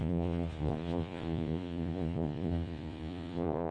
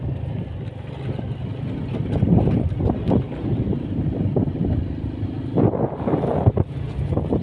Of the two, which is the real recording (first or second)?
second